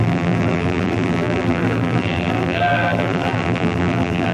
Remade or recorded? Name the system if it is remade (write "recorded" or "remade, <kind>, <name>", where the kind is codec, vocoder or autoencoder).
remade, vocoder, BigVGAN v2